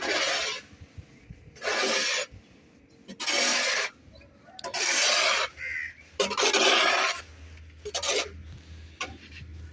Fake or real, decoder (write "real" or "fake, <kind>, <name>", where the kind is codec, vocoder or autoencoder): real